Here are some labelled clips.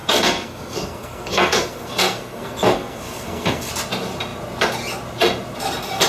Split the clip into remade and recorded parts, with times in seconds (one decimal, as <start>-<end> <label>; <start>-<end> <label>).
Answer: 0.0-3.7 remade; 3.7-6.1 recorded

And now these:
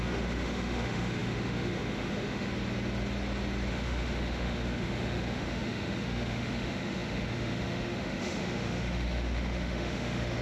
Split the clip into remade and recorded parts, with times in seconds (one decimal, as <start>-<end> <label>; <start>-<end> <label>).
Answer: 0.0-2.5 remade; 2.5-3.7 recorded; 3.7-10.4 remade

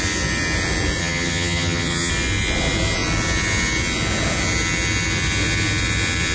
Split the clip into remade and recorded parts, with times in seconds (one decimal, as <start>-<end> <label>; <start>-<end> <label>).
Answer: 0.0-1.0 recorded; 1.0-2.1 remade; 2.1-6.3 recorded

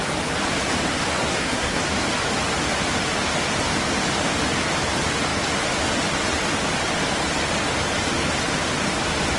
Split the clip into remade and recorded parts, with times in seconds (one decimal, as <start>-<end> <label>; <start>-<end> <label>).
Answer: 0.0-1.2 recorded; 1.2-1.8 remade; 1.8-9.4 recorded

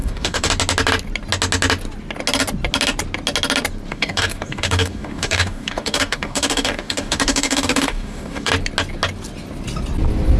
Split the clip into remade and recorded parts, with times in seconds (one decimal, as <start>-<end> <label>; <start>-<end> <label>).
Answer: 0.0-0.5 remade; 0.5-3.9 recorded; 3.9-8.5 remade; 8.5-10.4 recorded

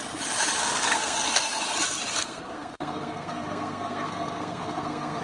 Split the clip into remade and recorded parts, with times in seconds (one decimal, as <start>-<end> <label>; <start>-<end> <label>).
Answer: 0.0-0.6 recorded; 0.6-1.6 remade; 1.6-2.1 recorded; 2.1-5.2 remade

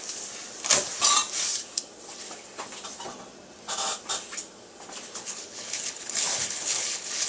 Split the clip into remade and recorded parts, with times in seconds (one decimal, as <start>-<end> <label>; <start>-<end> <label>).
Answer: 0.0-5.2 recorded; 5.2-7.3 remade

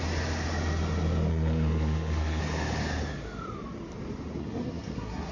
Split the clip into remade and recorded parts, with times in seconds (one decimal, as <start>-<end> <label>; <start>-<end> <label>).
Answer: 0.0-1.3 recorded; 1.3-2.4 remade; 2.4-4.4 recorded; 4.4-5.3 remade